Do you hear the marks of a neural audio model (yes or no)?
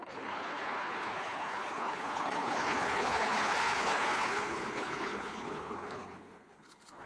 yes